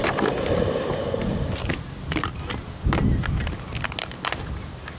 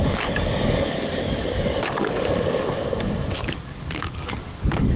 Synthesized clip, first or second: second